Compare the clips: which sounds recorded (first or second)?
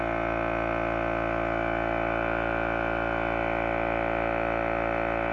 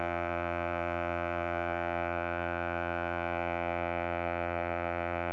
first